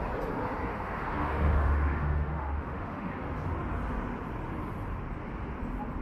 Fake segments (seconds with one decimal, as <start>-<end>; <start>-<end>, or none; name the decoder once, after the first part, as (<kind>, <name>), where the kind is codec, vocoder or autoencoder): 0.7-3.1 (autoencoder, DAC-VAE)